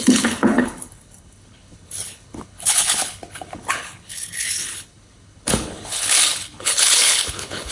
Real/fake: fake